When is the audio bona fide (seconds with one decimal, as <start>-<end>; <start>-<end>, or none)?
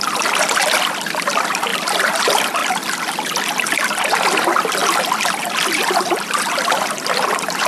2.6-3.5